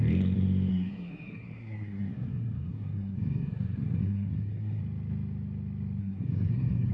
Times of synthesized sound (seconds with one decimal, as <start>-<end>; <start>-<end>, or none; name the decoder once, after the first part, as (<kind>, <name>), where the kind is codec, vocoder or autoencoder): 0.7-4.8 (codec, SNAC); 6.0-6.9